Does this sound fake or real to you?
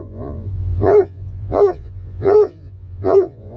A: fake